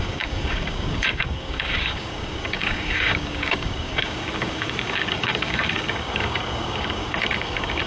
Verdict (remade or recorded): remade